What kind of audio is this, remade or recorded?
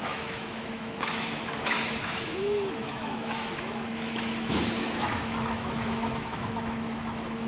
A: remade